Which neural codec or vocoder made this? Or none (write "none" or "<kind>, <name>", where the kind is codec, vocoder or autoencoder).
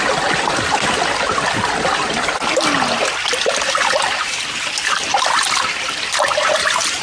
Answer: none